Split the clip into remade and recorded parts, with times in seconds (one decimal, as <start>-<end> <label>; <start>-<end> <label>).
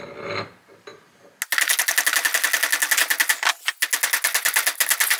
0.0-5.2 recorded